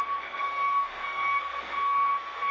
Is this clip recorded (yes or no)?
no